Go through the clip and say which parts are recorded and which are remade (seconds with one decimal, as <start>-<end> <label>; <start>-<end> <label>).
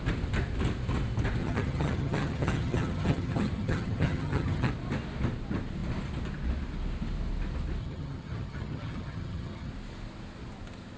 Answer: 0.0-1.4 recorded; 1.4-4.7 remade; 4.7-7.8 recorded; 7.8-9.7 remade; 9.7-11.0 recorded